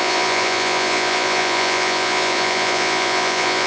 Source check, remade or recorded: remade